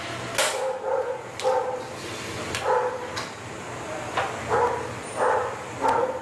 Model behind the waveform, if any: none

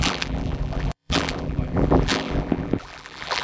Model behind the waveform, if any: vocoder, BigVGAN v2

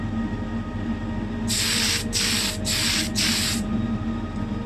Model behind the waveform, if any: none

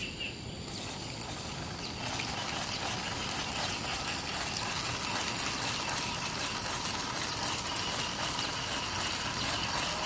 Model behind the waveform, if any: none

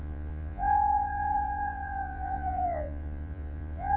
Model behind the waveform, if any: vocoder, Vocos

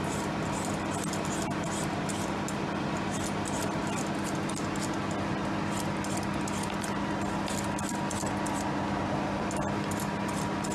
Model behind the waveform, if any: none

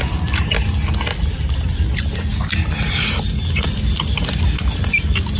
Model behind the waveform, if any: none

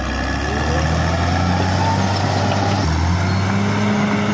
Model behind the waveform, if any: none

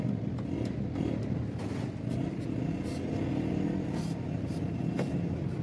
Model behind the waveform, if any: none